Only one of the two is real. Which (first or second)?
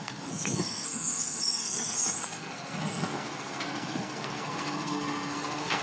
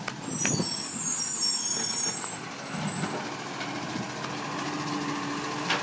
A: second